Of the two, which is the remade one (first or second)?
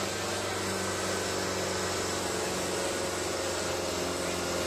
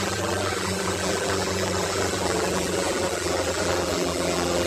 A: second